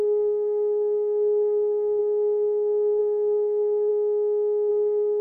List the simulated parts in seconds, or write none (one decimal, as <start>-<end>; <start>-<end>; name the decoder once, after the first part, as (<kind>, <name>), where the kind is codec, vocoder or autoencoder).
0.0-3.9 (codec, DAC); 4.7-5.2